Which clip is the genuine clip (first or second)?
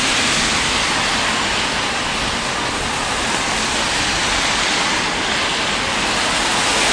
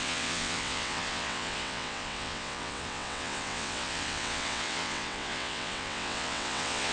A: first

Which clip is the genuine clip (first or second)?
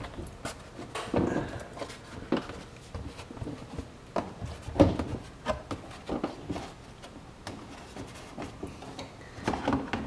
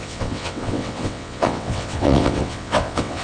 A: first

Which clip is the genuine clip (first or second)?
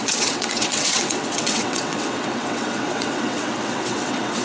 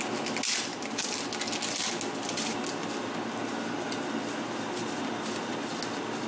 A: second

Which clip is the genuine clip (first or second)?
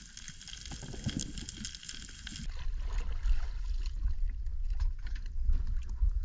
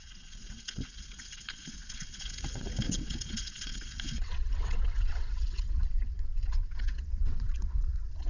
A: first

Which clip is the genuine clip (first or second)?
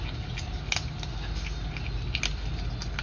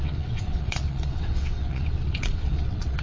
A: first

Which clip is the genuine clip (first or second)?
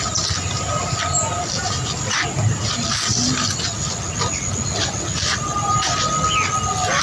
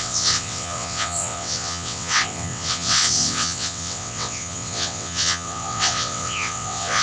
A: first